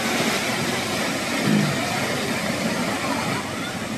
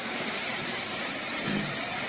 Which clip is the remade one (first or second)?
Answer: second